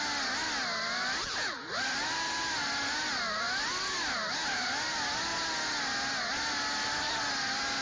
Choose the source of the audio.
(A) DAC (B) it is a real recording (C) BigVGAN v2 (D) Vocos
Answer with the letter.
B